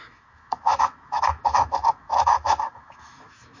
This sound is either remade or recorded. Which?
remade